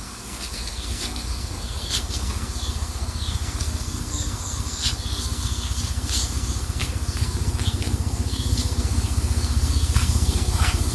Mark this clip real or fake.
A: fake